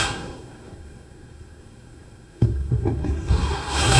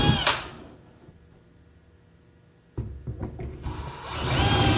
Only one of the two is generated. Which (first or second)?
first